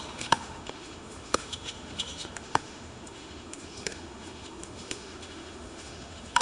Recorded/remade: remade